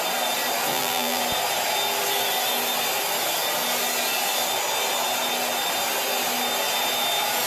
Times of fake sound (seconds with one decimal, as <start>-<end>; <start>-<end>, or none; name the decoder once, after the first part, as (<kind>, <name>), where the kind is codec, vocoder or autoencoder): 0.7-1.2 (vocoder, BigVGAN v2)